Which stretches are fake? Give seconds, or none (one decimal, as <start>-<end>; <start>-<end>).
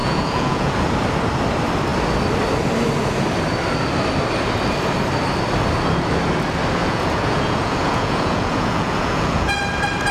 0.0-0.7; 6.8-9.5